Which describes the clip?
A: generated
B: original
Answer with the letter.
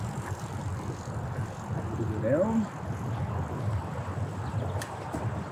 B